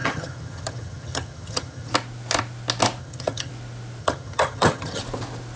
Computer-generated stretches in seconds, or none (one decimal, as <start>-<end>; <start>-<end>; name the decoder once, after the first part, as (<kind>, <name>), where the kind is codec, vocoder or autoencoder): 0.0-1.9 (vocoder, HiFi-GAN); 3.0-3.5; 4.0-5.0